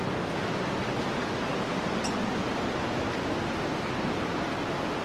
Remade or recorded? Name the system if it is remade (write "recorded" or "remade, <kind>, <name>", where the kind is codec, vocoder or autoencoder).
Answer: recorded